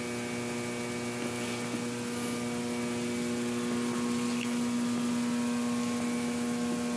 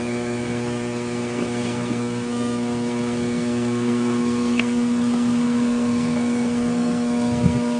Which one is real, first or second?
first